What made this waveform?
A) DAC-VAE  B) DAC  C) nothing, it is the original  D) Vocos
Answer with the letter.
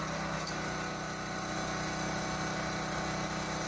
C